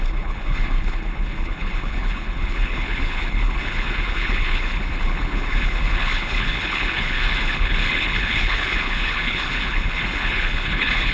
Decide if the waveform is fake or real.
fake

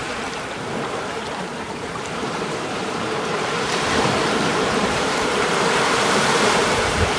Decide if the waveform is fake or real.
fake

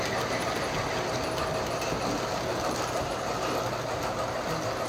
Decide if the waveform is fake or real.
real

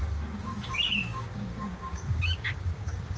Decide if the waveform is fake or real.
fake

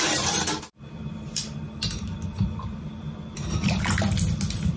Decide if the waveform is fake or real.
fake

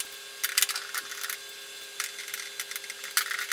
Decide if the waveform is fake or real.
real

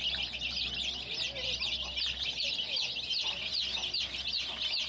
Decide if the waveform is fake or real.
real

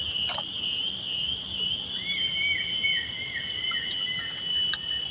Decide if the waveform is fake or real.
real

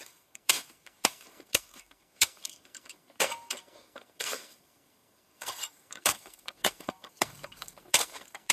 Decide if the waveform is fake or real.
fake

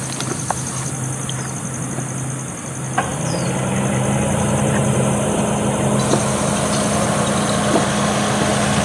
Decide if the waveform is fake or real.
real